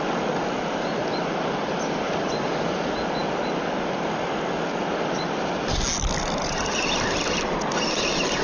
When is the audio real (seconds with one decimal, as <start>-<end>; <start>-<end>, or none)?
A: 0.0-8.4